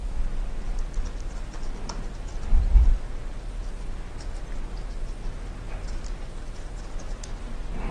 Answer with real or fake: real